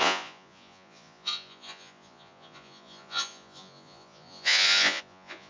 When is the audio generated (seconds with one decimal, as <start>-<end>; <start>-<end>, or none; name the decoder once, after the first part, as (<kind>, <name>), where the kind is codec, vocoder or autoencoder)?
0.0-5.5 (vocoder, Vocos)